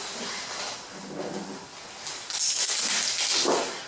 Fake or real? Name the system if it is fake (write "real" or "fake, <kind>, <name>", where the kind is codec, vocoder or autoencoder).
real